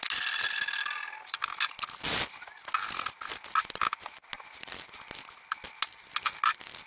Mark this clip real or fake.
real